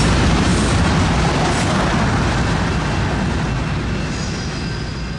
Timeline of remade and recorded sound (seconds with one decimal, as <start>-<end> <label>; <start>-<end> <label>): 0.0-5.2 recorded